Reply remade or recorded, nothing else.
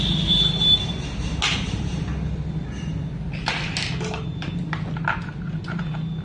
recorded